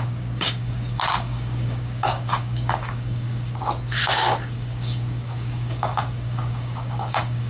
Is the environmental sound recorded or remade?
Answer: remade